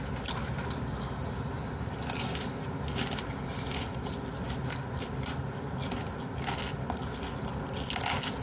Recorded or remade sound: recorded